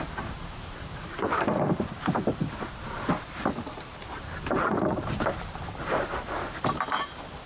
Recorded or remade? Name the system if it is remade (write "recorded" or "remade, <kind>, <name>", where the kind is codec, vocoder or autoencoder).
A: remade, vocoder, BigVGAN v2